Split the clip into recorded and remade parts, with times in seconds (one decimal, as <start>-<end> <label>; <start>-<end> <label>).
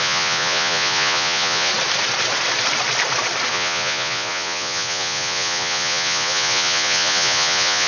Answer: 0.0-1.7 remade; 1.7-3.5 recorded; 3.5-7.9 remade